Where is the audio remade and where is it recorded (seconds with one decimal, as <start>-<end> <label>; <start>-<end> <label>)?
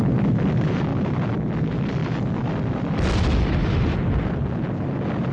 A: 0.0-0.9 remade; 0.9-1.5 recorded; 1.5-2.0 remade; 2.0-5.3 recorded